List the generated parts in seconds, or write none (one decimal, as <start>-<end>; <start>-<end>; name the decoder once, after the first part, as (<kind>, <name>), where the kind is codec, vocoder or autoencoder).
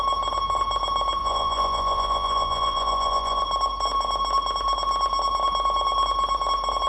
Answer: 1.2-3.4 (vocoder, Vocos)